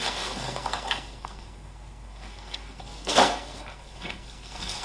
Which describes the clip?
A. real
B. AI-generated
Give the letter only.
B